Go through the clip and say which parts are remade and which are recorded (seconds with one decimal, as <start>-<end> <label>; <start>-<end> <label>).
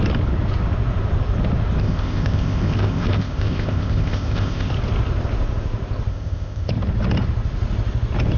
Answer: 0.0-1.8 recorded; 1.8-4.7 remade; 4.7-6.1 recorded; 6.1-6.7 remade; 6.7-8.4 recorded